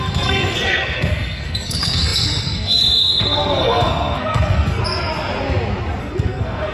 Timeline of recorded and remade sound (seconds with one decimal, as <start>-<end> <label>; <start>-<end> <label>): 0.0-4.8 remade; 4.8-6.0 recorded; 6.0-6.7 remade